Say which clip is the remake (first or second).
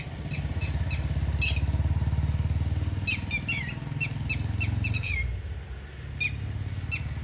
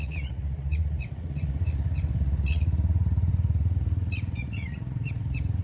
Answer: second